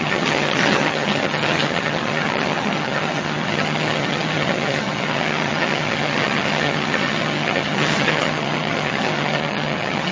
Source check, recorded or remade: remade